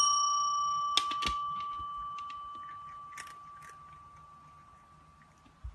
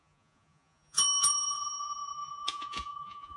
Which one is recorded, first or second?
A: first